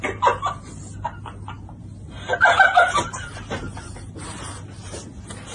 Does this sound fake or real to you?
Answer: real